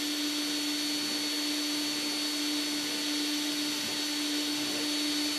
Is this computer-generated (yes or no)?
no